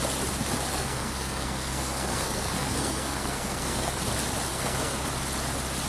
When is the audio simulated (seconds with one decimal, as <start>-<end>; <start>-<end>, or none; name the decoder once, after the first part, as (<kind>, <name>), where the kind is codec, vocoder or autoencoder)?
0.7-4.0 (codec, SNAC); 4.5-5.1